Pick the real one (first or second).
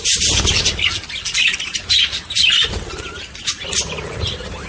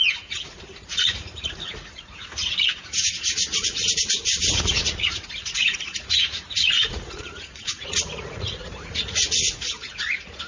first